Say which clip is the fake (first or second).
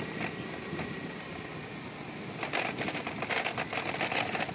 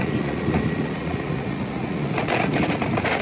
second